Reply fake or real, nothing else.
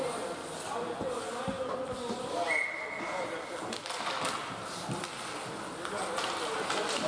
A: real